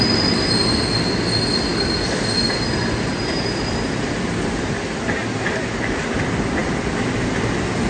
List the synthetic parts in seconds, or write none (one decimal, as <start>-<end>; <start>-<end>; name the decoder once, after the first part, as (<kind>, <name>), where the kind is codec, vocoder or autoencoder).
none